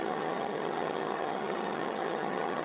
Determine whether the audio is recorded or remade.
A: remade